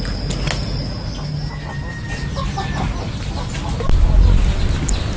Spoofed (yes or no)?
no